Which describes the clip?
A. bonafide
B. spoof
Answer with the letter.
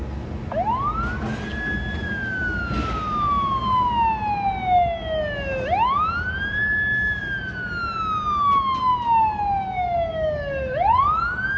A